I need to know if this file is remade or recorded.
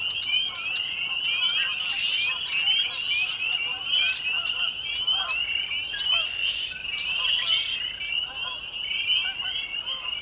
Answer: recorded